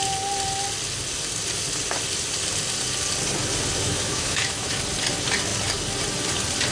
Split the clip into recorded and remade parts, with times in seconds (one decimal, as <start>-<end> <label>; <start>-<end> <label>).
0.0-3.8 recorded; 3.8-4.8 remade; 4.8-6.7 recorded